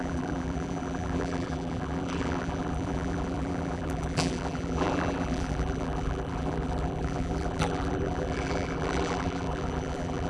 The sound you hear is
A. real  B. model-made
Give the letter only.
B